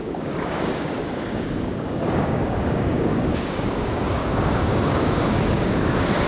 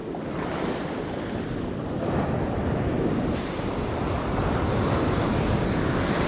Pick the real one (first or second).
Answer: second